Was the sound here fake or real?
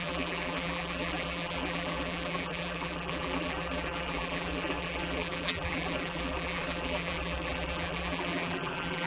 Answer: fake